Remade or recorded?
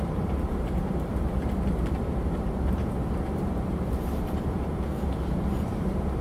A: remade